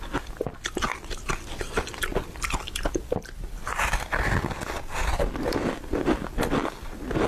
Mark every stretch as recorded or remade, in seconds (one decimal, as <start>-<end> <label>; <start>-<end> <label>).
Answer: 0.0-7.3 recorded